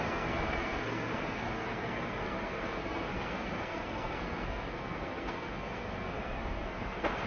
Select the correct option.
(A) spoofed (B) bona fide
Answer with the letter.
A